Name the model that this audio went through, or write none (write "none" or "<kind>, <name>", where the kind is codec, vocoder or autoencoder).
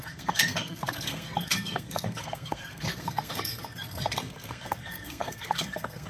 codec, SNAC